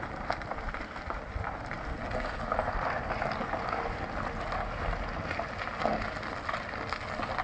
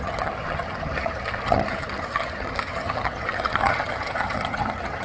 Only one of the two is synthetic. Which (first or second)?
second